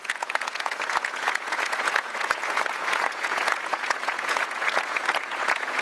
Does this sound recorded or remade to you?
remade